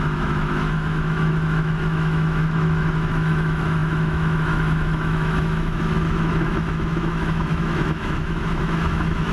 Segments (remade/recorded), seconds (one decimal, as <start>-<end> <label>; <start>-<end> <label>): 0.0-9.3 remade